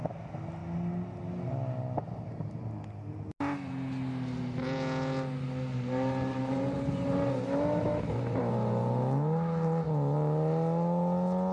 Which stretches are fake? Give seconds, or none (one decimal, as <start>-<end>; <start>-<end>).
5.7-8.4